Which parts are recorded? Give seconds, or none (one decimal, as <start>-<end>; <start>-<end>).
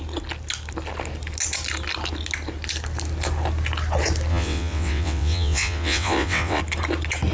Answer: 0.0-4.3; 6.6-7.3